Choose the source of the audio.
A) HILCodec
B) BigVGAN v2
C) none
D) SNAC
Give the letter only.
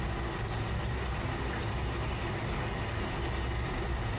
C